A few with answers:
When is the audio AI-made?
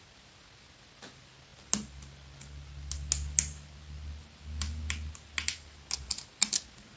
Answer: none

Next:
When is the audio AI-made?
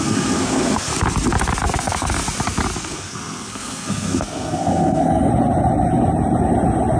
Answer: 0.0-0.9 (codec, SNAC); 1.8-2.2; 2.8-5.3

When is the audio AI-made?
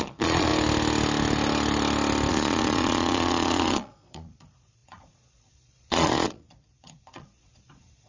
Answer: 0.0-0.5 (vocoder, Vocos); 2.3-8.1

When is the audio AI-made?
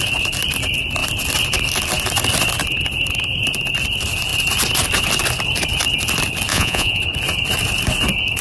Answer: 6.5-7.0 (vocoder, Vocos)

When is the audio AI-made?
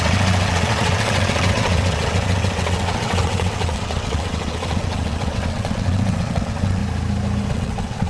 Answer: 0.0-6.8 (vocoder, WaveNeXt); 7.5-8.1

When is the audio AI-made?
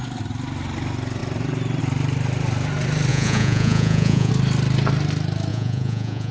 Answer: 3.1-4.3 (vocoder, Vocos); 5.5-6.3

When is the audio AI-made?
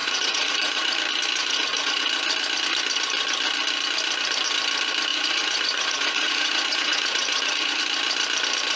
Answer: 0.0-1.0 (vocoder, Vocos); 1.4-2.0; 5.1-7.8